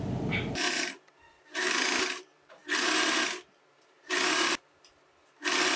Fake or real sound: fake